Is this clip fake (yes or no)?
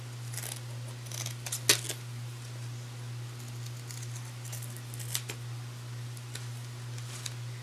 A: no